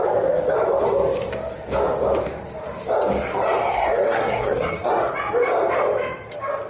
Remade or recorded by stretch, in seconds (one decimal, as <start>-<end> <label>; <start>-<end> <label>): 0.0-3.7 recorded; 3.7-4.9 remade; 4.9-6.7 recorded